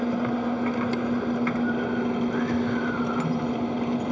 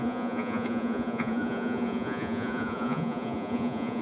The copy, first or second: second